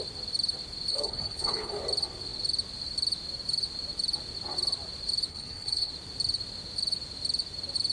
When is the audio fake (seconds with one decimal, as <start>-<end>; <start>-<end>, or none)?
0.9-1.8; 5.3-5.9

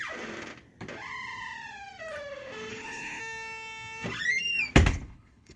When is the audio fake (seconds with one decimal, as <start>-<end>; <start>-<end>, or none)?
2.7-3.2; 4.9-5.6

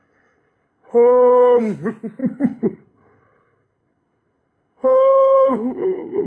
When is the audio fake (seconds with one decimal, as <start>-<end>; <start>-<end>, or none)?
0.0-1.6; 2.2-6.3